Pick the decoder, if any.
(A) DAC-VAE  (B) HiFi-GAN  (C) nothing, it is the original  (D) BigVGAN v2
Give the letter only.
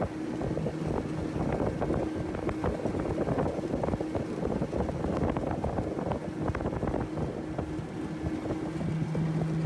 C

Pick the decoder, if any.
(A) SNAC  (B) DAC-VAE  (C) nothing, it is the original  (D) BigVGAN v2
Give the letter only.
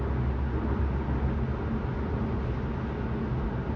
C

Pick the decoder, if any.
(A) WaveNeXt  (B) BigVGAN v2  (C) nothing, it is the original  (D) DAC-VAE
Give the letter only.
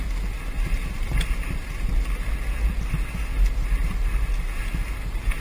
C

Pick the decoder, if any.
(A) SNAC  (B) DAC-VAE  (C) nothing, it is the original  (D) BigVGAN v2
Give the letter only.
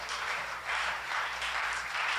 D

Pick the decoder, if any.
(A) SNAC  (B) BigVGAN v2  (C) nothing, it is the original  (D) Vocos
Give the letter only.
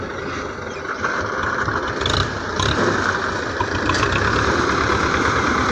B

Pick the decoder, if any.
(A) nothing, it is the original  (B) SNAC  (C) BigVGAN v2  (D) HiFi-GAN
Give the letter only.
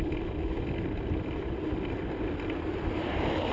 A